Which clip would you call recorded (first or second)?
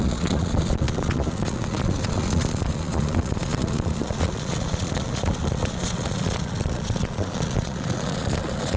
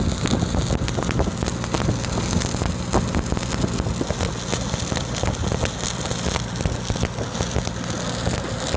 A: second